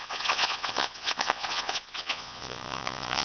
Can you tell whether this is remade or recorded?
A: remade